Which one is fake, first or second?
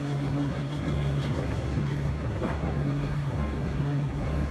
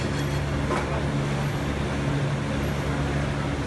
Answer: first